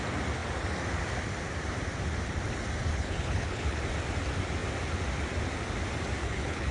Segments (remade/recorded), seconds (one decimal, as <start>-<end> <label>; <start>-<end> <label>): 0.0-2.9 recorded; 2.9-3.8 remade; 3.8-6.2 recorded; 6.2-6.7 remade